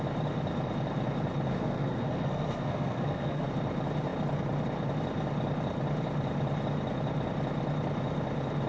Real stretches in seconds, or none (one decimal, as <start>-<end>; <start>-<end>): 0.0-1.5; 3.5-8.7